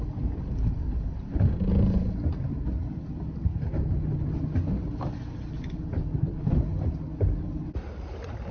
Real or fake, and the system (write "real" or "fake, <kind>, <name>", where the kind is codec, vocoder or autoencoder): real